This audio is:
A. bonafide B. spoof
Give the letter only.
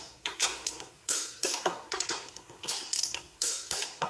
B